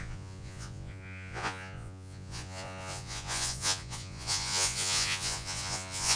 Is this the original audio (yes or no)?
no